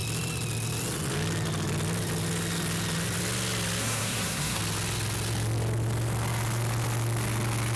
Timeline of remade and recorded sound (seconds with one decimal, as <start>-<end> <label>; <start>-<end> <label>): 0.0-3.8 recorded; 3.8-4.6 remade; 4.6-7.8 recorded